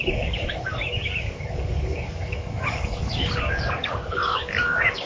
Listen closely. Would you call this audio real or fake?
fake